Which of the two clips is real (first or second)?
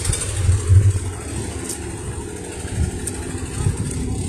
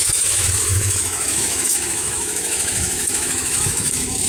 first